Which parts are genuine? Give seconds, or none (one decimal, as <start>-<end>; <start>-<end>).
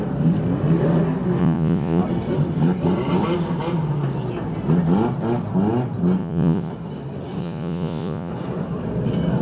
0.0-1.4; 2.0-6.2; 6.7-7.4; 8.3-9.4